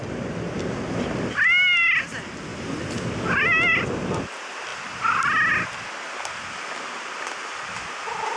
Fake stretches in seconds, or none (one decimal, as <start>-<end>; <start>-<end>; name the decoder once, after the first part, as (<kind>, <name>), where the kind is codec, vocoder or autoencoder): none